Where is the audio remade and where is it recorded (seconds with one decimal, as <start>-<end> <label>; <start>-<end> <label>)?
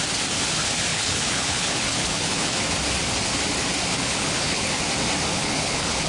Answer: 0.0-0.9 recorded; 0.9-2.6 remade; 2.6-3.9 recorded; 3.9-4.8 remade; 4.8-5.3 recorded; 5.3-6.1 remade